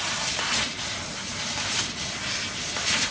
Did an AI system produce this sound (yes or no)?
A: no